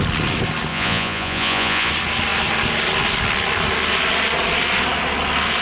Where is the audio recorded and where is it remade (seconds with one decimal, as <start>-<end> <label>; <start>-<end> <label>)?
0.0-0.7 recorded; 0.7-1.9 remade; 1.9-5.6 recorded